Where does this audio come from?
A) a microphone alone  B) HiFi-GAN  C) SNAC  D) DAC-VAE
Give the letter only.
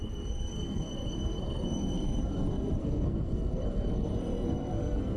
C